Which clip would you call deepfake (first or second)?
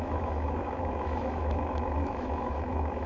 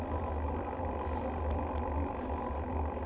first